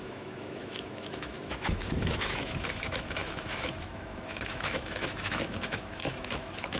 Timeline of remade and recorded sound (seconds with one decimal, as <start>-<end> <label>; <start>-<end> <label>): 0.0-6.8 remade